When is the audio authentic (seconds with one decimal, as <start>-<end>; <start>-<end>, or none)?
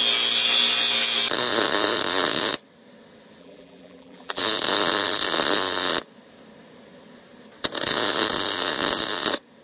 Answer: 0.0-3.4; 4.4-9.6